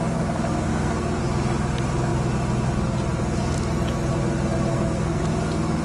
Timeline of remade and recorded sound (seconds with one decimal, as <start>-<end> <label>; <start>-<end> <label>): 0.0-0.7 recorded; 0.7-1.2 remade; 1.2-4.7 recorded; 4.7-5.2 remade; 5.2-5.8 recorded